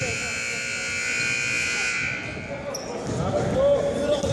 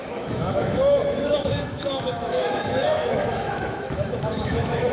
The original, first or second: first